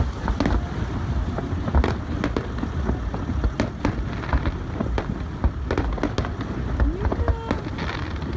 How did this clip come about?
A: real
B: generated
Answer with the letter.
A